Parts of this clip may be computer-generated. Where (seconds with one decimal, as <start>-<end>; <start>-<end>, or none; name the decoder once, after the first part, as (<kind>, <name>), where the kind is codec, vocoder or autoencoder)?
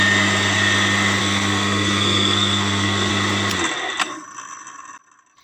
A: 1.2-3.1 (codec, SNAC)